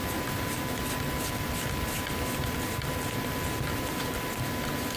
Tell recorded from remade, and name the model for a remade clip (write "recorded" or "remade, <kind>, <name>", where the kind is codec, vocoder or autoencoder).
recorded